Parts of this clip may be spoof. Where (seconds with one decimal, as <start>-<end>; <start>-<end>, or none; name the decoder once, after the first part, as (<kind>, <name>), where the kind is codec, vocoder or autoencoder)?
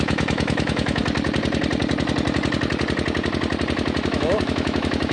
0.0-1.0 (autoencoder, DAC-VAE); 4.1-5.1